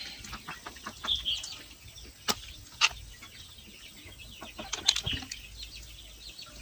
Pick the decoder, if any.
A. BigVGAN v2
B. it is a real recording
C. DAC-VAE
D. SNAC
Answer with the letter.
B